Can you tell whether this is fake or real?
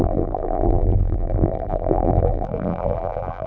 fake